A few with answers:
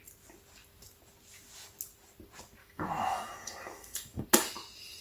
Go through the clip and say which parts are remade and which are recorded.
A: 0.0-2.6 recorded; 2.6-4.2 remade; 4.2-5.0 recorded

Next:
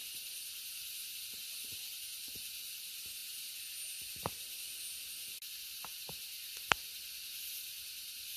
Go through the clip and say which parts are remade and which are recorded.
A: 0.0-8.4 recorded

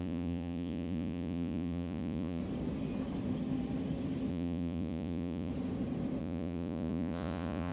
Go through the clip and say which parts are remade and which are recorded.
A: 0.0-2.4 remade; 2.4-4.3 recorded; 4.3-5.5 remade; 5.5-6.2 recorded; 6.2-7.7 remade

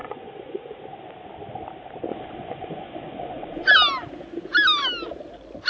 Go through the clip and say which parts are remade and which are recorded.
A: 0.0-0.8 remade; 0.8-2.1 recorded; 2.1-3.7 remade; 3.7-5.7 recorded

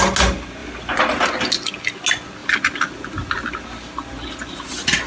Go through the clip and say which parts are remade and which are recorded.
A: 0.0-5.1 recorded